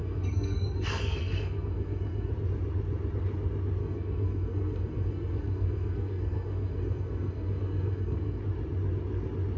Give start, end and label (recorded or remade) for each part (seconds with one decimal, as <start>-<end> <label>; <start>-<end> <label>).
0.0-2.3 remade; 2.3-3.8 recorded; 3.8-8.4 remade; 8.4-9.6 recorded